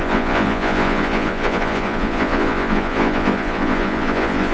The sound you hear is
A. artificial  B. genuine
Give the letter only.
A